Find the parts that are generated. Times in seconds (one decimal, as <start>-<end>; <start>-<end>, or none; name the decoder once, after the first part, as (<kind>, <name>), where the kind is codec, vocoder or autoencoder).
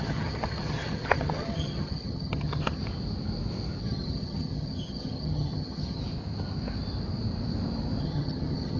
0.0-2.8 (vocoder, HiFi-GAN); 3.8-6.0; 8.0-8.8